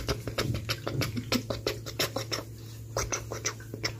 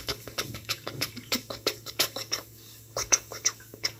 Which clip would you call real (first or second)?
first